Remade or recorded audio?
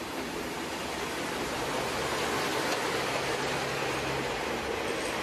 recorded